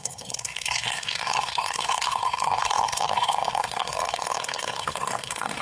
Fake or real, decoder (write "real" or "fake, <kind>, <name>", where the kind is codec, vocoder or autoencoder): fake, codec, SNAC